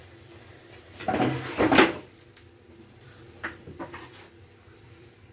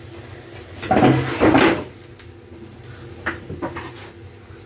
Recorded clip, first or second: second